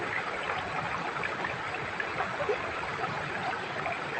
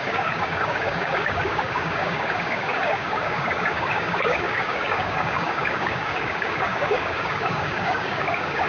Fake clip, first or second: second